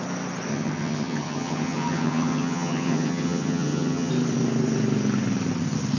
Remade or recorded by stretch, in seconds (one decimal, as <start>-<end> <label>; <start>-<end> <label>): 0.0-0.5 recorded; 0.5-4.1 remade; 4.1-6.0 recorded